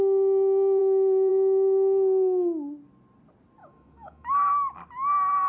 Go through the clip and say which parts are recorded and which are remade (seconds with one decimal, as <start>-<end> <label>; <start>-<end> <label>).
0.0-0.8 recorded; 0.8-1.3 remade; 1.3-3.6 recorded; 3.6-4.5 remade; 4.5-5.5 recorded